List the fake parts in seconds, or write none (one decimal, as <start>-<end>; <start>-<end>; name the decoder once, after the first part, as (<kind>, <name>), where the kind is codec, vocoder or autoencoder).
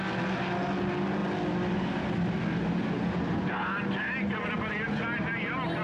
none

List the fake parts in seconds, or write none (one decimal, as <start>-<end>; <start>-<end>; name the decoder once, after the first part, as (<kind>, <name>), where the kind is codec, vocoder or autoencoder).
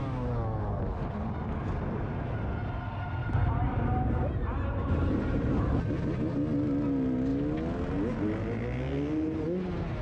3.2-5.6 (vocoder, BigVGAN v2)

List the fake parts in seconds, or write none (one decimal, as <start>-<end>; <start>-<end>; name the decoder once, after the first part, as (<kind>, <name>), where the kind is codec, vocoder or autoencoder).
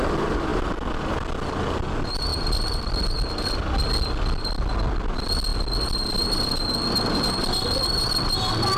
none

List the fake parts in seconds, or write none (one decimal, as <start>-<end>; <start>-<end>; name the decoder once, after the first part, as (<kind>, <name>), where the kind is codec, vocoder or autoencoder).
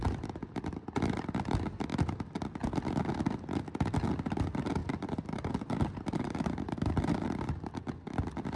4.8-7.7 (vocoder, BigVGAN v2)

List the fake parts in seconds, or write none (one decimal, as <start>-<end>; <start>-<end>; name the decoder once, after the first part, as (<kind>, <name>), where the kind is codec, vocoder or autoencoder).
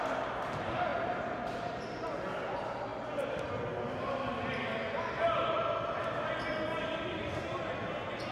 0.9-2.1 (vocoder, BigVGAN v2)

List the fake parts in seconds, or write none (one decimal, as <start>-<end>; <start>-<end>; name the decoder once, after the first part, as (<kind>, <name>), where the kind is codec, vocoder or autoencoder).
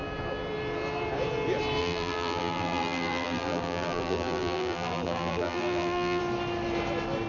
1.8-6.2 (vocoder, BigVGAN v2)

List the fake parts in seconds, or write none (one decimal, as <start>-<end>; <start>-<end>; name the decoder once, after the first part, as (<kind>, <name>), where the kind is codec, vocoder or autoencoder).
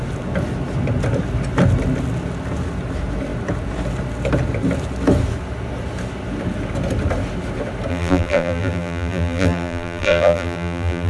7.9-11.1 (vocoder, BigVGAN v2)